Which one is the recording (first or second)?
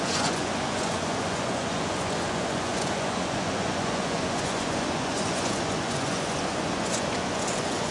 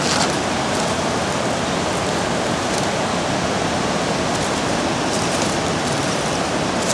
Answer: second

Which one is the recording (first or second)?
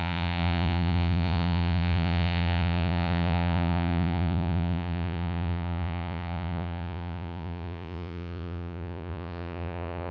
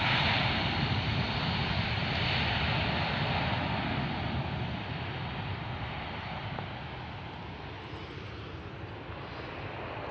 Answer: second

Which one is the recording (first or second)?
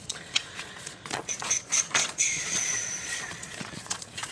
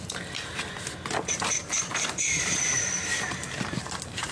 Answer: second